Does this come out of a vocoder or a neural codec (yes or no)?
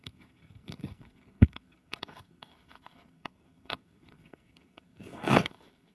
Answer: yes